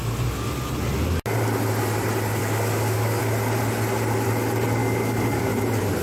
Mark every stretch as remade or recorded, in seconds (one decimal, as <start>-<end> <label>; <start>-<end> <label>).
0.0-2.4 recorded; 2.4-3.2 remade; 3.2-4.8 recorded; 4.8-5.5 remade; 5.5-6.0 recorded